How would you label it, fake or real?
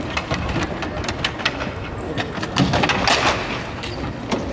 real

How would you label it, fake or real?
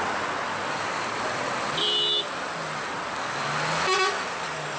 real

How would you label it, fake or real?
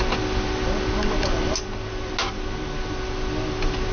real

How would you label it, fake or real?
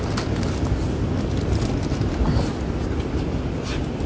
real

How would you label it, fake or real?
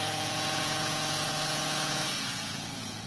fake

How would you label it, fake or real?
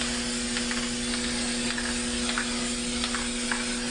real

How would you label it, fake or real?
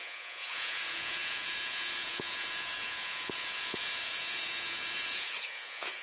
fake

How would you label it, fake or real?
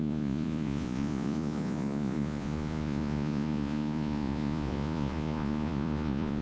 fake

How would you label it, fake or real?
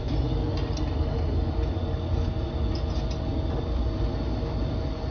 real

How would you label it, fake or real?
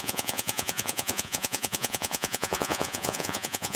fake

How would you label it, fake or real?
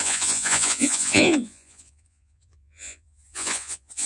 fake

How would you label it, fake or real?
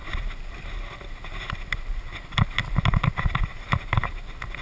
real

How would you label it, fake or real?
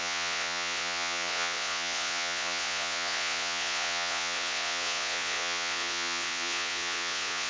fake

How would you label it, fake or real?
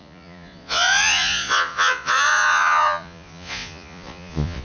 fake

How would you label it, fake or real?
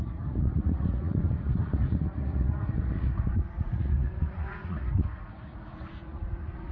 fake